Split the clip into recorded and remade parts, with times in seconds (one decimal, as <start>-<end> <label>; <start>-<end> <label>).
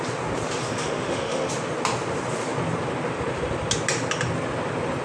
0.0-0.6 recorded; 0.6-1.5 remade; 1.5-5.0 recorded